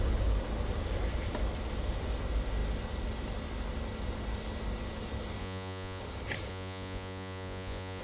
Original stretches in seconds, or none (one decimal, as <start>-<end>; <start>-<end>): 0.0-5.4; 6.0-6.5